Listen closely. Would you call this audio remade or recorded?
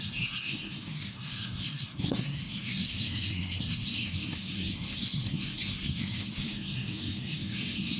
remade